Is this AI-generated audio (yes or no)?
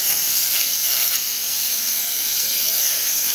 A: yes